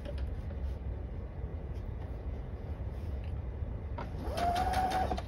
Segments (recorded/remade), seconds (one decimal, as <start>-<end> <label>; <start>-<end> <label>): 0.0-1.5 recorded; 1.5-3.3 remade; 3.3-5.3 recorded